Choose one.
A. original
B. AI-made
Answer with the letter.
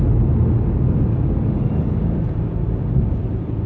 A